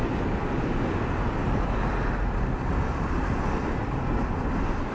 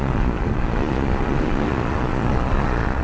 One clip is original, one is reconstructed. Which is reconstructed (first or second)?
second